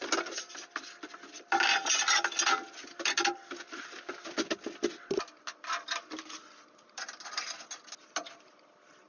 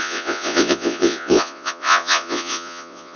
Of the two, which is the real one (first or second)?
first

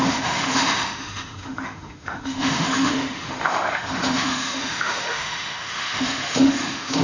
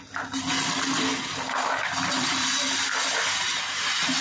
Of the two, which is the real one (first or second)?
second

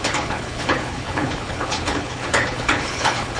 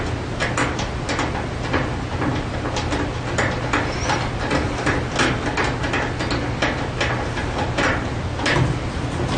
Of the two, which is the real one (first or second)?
second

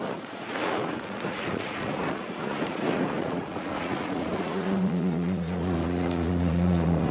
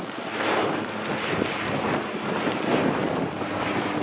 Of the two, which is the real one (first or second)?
second